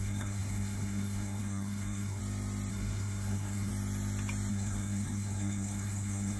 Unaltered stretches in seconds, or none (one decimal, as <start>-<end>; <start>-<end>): 2.2-2.7; 3.7-4.5